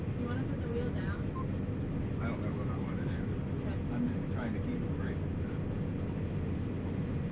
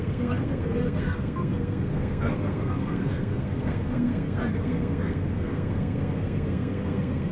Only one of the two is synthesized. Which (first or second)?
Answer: second